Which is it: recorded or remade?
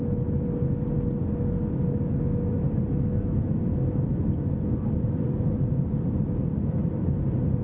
recorded